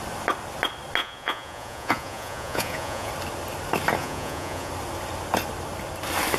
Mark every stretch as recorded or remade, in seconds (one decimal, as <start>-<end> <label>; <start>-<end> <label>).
0.0-1.0 recorded; 1.0-3.1 remade; 3.1-4.0 recorded; 4.0-4.7 remade; 4.7-6.4 recorded